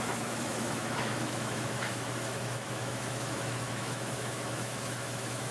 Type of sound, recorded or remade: remade